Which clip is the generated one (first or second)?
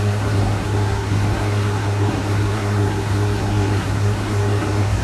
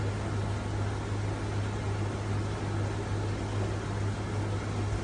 first